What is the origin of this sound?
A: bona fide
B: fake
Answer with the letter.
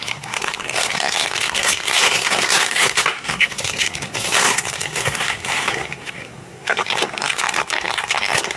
B